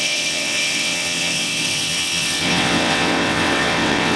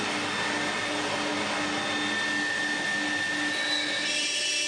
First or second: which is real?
second